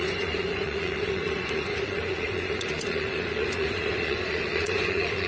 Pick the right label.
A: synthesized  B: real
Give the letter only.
A